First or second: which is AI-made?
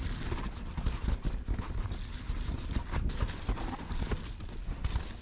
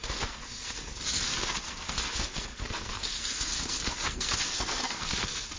second